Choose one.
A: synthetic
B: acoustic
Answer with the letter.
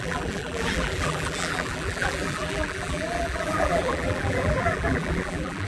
A